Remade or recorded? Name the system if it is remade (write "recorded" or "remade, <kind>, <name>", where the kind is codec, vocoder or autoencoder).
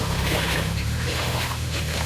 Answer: remade, autoencoder, DAC-VAE